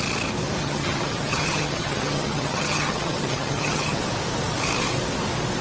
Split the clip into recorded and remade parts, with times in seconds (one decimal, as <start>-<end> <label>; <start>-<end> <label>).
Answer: 0.0-0.6 recorded; 0.6-4.0 remade; 4.0-5.6 recorded